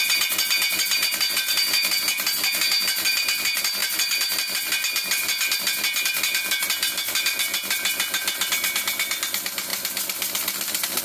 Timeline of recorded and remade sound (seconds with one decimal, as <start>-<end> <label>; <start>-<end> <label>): 0.0-11.0 recorded